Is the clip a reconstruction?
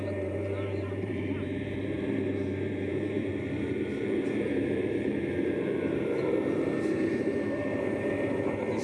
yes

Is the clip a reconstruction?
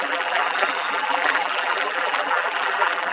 yes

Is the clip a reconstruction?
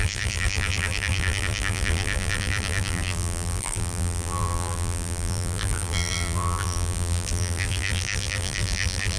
yes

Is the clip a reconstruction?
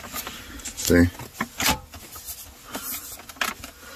no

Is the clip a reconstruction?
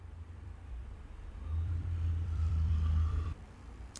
yes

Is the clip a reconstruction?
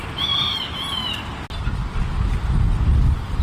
no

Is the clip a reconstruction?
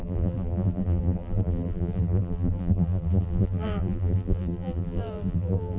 yes